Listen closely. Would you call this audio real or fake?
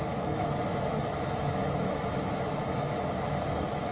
fake